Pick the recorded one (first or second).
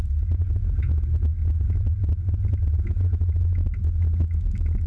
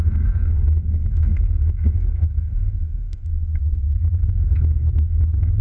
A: first